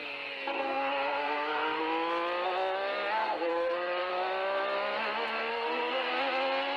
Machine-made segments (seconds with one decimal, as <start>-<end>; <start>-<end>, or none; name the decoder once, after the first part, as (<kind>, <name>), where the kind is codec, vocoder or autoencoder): 0.0-1.8 (codec, SNAC); 3.2-4.1; 5.5-6.1